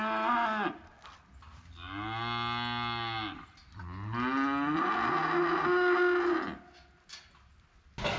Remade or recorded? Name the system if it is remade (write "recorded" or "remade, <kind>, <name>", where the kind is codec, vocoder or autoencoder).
recorded